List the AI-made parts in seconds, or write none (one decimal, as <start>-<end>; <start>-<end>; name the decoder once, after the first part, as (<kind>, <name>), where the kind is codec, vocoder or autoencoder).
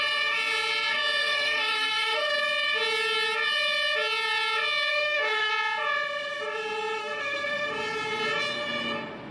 1.2-2.3 (codec, SNAC); 4.9-5.5; 7.0-7.7